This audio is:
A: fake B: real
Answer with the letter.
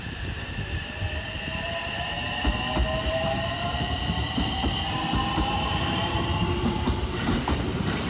A